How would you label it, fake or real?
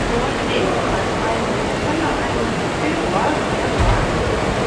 real